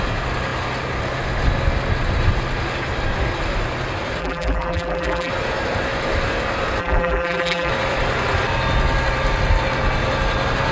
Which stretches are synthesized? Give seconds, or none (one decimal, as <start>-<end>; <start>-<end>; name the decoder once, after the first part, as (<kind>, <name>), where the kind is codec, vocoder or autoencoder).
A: 4.2-5.3 (vocoder, BigVGAN v2); 6.8-7.7